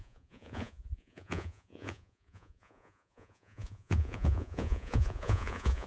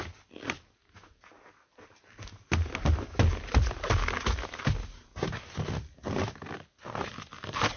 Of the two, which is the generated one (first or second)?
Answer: first